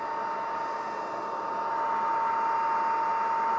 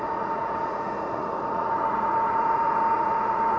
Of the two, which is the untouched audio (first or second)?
first